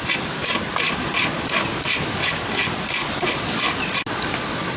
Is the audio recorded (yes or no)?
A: yes